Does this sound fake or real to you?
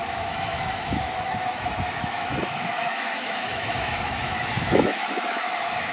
fake